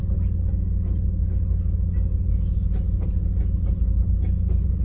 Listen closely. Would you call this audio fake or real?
real